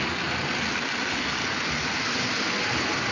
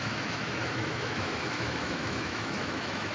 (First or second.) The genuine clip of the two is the first